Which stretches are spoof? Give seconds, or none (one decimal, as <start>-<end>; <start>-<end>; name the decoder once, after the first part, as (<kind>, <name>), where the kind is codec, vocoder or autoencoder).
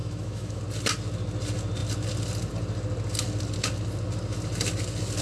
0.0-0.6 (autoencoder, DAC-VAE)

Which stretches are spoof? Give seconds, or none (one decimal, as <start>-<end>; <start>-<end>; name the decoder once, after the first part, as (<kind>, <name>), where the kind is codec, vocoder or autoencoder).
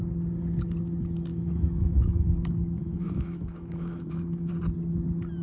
1.3-4.5 (autoencoder, DAC-VAE)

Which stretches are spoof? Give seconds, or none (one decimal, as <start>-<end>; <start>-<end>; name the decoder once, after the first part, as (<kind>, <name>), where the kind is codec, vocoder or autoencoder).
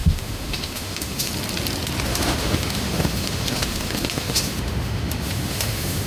0.0-1.3 (autoencoder, DAC-VAE); 2.1-6.1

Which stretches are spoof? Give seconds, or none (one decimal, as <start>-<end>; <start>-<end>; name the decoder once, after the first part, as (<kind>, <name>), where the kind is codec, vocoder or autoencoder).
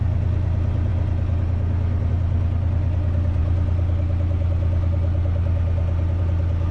none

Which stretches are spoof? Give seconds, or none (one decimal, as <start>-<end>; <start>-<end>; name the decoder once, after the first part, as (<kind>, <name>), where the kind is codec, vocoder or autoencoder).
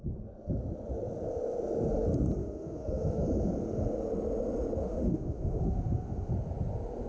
2.4-3.2 (autoencoder, DAC-VAE); 4.8-6.3